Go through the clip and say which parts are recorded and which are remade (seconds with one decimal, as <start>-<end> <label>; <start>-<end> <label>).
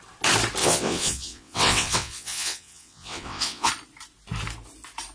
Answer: 0.0-0.6 recorded; 0.6-3.7 remade; 3.7-5.1 recorded